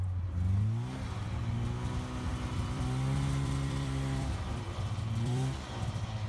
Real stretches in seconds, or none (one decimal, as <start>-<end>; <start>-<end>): 0.0-2.3